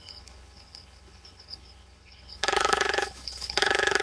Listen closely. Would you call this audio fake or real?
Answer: fake